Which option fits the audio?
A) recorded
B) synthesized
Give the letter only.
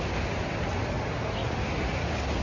A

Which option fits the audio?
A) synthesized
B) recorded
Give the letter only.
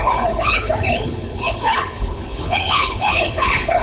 A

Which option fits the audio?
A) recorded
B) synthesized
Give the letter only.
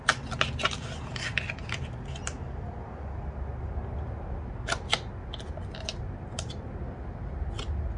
A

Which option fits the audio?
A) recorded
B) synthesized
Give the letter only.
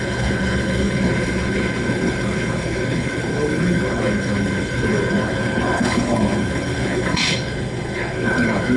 B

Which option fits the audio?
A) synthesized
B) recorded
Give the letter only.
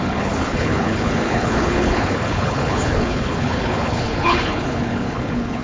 A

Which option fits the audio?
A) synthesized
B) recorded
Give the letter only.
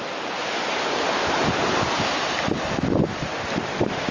B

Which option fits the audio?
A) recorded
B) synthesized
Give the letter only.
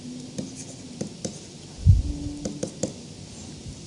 A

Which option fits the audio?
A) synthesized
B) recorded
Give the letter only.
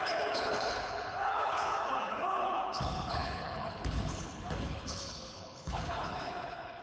A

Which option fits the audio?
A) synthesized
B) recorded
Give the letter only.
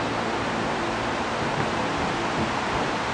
B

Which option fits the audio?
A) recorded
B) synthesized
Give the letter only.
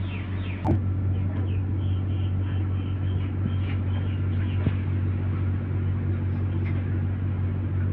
A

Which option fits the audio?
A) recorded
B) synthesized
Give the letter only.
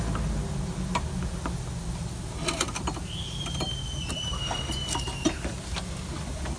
A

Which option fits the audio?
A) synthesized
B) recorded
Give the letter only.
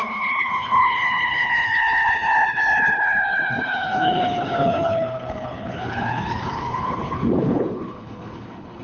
A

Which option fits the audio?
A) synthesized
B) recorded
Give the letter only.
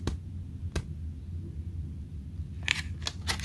B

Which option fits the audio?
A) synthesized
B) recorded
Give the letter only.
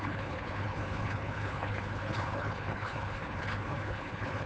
A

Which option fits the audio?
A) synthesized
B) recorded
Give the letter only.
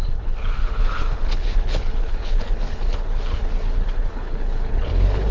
A